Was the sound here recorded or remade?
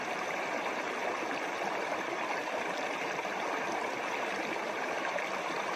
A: remade